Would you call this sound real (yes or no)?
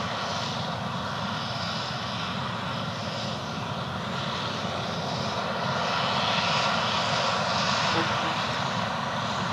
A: yes